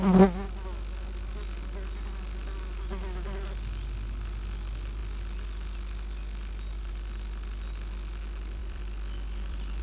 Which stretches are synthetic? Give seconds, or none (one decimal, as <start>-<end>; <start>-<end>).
8.6-9.8